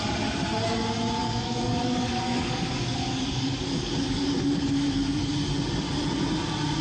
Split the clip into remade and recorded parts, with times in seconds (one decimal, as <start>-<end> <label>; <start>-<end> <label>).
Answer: 0.0-1.2 recorded; 1.2-5.3 remade; 5.3-6.8 recorded